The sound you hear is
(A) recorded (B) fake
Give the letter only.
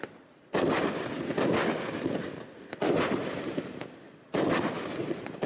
A